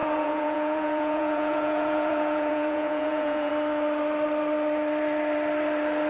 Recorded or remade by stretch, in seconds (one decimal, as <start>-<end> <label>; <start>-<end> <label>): 0.0-3.5 remade; 3.5-6.1 recorded